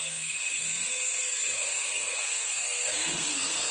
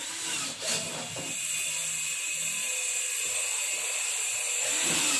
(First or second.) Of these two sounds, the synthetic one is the first